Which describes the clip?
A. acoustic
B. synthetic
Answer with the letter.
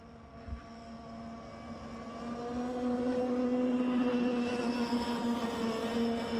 A